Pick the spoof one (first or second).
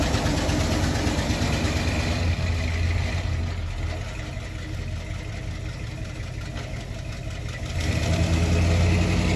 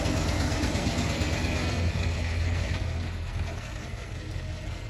second